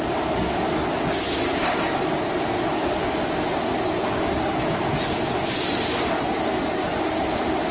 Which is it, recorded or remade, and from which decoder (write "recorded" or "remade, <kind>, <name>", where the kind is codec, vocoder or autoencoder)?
recorded